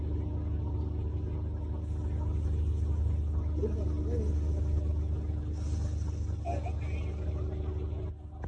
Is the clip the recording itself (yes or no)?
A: yes